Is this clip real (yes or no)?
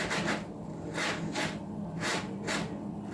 yes